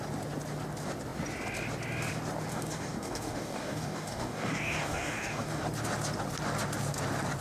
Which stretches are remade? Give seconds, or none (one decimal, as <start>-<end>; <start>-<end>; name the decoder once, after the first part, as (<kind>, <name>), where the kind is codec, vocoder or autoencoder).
2.5-5.6 (codec, DAC)